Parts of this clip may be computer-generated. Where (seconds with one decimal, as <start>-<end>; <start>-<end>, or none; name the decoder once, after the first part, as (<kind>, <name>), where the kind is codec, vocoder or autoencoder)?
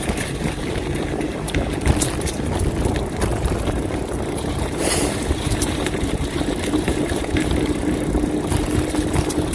3.3-8.3 (vocoder, BigVGAN v2)